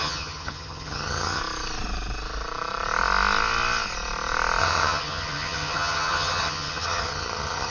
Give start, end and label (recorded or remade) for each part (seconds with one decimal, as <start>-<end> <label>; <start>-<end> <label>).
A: 0.0-1.4 remade; 1.4-4.6 recorded; 4.6-7.7 remade